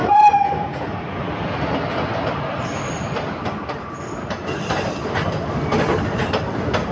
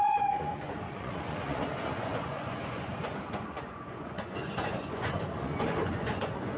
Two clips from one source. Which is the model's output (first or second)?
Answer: second